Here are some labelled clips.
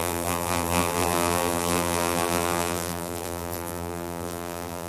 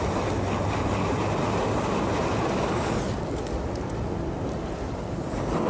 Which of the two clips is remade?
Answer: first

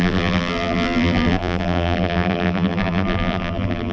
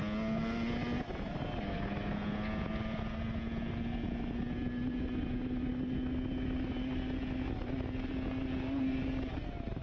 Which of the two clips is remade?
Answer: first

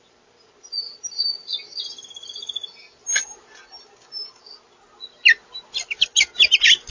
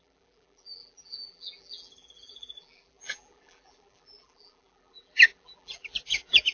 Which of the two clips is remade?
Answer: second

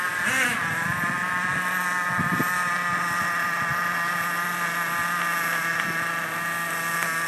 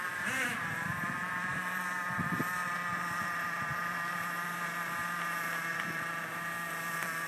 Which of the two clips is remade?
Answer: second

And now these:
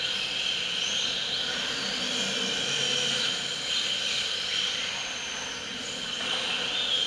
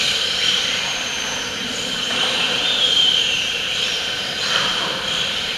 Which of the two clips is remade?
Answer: second